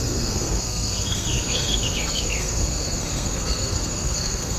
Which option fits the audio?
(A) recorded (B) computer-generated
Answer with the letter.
B